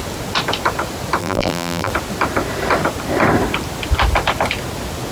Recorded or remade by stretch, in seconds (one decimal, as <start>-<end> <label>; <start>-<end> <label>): 0.0-1.2 recorded; 1.2-1.9 remade; 1.9-5.1 recorded